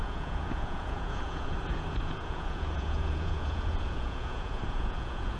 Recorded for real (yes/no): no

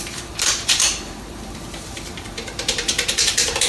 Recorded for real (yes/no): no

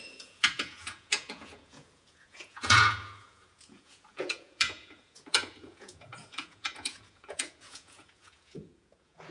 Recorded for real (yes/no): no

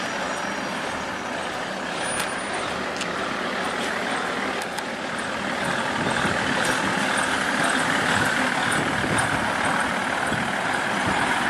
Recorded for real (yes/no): yes